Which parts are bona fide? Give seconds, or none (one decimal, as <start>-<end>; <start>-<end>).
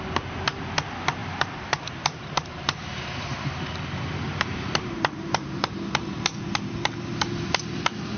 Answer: 0.0-1.2; 5.6-8.2